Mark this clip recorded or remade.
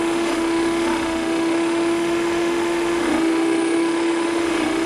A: remade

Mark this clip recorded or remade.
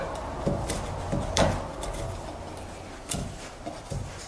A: recorded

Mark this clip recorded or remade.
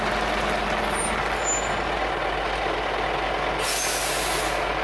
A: recorded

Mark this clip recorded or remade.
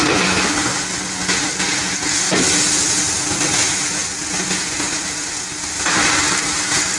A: recorded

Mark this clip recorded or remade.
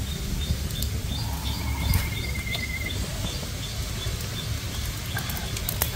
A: recorded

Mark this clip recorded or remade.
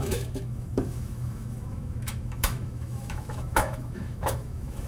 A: remade